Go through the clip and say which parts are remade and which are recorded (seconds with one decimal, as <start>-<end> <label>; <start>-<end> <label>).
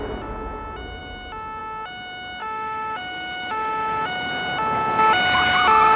0.0-2.4 recorded; 2.4-4.3 remade; 4.3-6.0 recorded